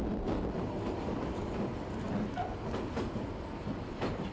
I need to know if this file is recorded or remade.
recorded